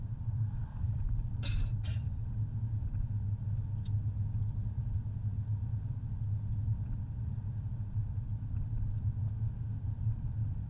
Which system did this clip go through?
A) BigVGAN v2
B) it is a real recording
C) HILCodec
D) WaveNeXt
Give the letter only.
B